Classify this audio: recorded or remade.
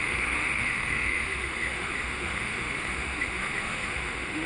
remade